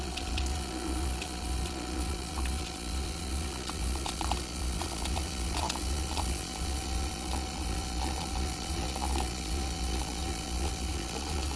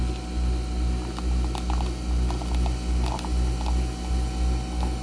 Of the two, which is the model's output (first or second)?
first